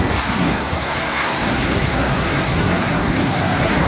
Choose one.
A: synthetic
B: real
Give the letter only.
A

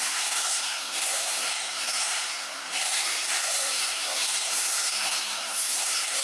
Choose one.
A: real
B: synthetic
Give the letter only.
B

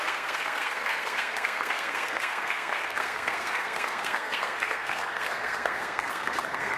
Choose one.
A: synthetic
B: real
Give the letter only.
A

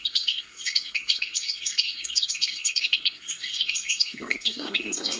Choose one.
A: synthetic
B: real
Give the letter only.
A